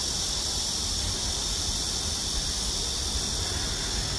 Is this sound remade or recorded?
recorded